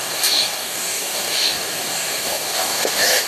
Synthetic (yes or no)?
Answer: yes